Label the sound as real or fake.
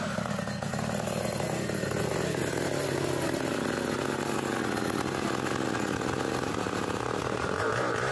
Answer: real